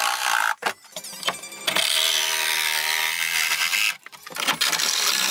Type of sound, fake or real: real